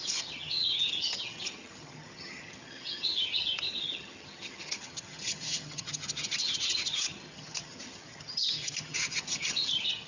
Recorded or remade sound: remade